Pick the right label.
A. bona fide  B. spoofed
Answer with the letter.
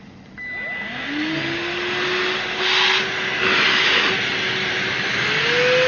A